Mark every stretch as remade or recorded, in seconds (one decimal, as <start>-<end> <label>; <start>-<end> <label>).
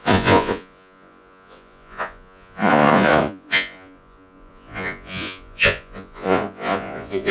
0.0-7.3 remade